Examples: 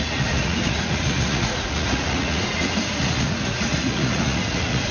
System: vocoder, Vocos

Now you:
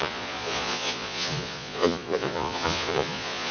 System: vocoder, Vocos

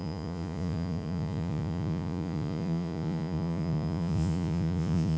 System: vocoder, Vocos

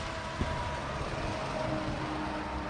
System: none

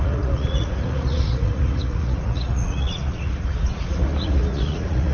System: vocoder, Vocos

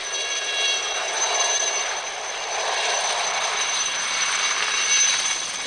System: none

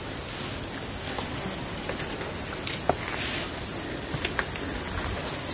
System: none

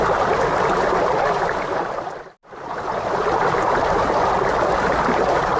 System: none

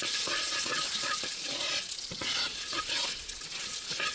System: vocoder, Vocos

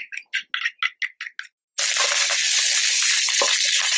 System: none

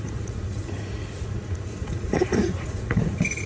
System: vocoder, Vocos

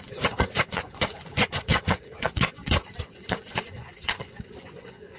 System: vocoder, Vocos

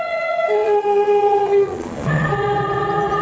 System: vocoder, Vocos